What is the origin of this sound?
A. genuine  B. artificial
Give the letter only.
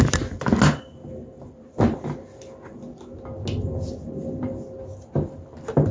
A